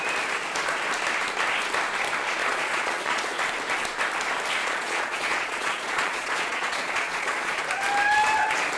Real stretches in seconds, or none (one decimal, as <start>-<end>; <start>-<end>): 0.0-2.4; 3.4-4.6; 7.6-8.8